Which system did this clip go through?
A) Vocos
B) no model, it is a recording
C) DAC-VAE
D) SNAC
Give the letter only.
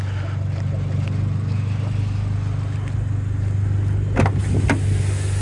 B